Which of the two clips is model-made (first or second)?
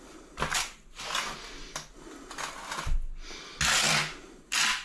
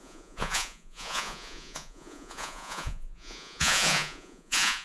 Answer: second